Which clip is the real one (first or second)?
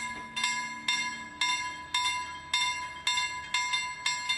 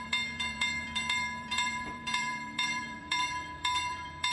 first